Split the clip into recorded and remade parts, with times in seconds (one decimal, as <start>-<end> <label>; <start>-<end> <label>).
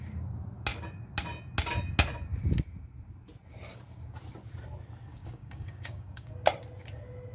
0.0-5.1 recorded; 5.1-6.3 remade; 6.3-7.3 recorded